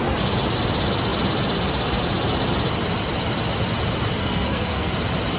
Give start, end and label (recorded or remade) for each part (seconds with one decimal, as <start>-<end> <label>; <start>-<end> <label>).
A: 0.0-4.2 recorded; 4.2-4.9 remade; 4.9-5.4 recorded